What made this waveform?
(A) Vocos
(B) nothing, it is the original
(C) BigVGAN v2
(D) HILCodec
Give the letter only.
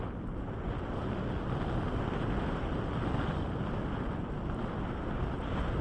B